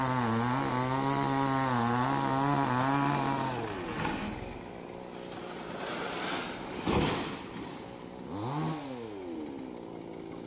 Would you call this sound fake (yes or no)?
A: no